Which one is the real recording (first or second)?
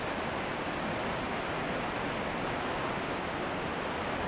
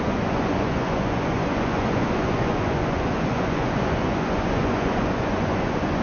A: first